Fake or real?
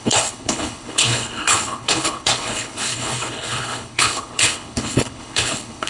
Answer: fake